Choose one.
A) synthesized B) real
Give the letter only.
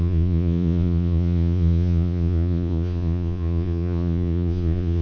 A